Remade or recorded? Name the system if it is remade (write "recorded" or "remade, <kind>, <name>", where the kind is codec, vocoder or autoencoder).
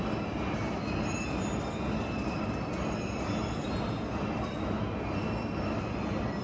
recorded